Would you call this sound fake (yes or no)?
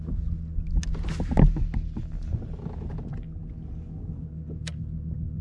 no